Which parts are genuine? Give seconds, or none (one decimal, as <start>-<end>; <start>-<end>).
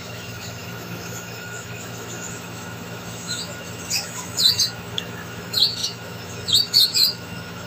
none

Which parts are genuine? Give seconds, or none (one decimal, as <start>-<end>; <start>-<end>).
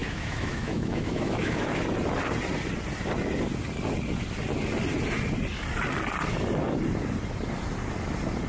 1.8-8.5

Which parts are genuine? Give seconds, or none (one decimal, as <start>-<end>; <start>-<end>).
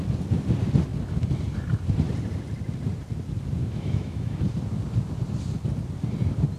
0.0-3.6; 4.5-6.6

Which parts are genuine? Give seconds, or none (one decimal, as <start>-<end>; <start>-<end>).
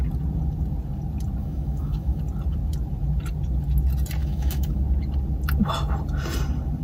0.0-1.4; 2.2-4.2; 4.8-6.8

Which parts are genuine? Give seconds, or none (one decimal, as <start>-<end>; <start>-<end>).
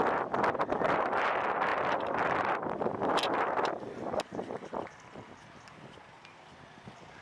0.0-7.2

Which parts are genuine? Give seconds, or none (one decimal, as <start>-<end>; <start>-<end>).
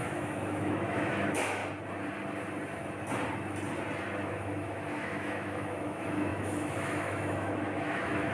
1.6-4.2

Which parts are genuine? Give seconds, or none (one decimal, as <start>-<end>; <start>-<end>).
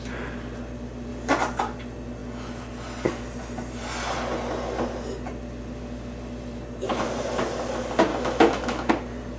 0.0-8.1; 8.9-9.4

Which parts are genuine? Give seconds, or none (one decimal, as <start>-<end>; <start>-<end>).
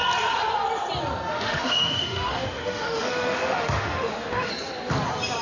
0.0-1.3; 4.5-5.4